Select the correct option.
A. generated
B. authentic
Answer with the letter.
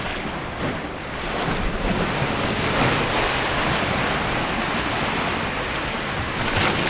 B